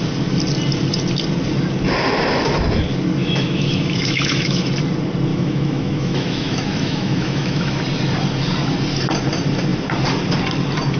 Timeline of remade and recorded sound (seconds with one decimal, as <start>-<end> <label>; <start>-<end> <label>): 0.0-3.2 recorded; 3.2-4.7 remade; 4.7-5.3 recorded; 5.3-7.8 remade; 7.8-11.0 recorded